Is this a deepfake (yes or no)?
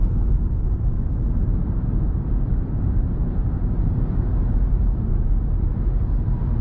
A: yes